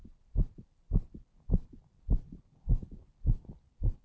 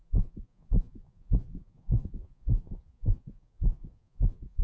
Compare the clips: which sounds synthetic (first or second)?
second